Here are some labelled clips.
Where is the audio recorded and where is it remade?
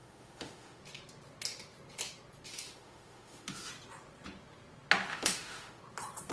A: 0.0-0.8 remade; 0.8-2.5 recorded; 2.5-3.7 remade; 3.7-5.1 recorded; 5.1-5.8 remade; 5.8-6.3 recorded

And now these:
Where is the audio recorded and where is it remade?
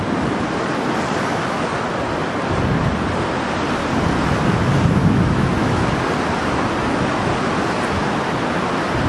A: 0.0-5.0 recorded; 5.0-5.9 remade; 5.9-9.1 recorded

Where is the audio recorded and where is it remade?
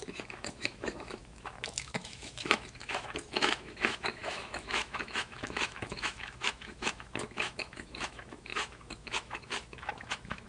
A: 0.0-10.5 remade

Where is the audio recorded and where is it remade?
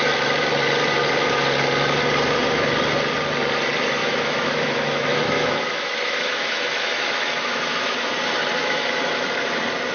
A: 0.0-4.0 recorded; 4.0-8.1 remade; 8.1-8.6 recorded; 8.6-9.1 remade; 9.1-9.9 recorded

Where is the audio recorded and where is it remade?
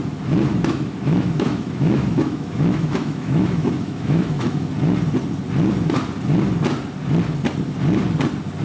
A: 0.0-0.5 recorded; 0.5-4.7 remade; 4.7-8.6 recorded